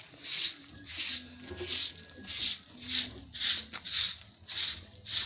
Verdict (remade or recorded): recorded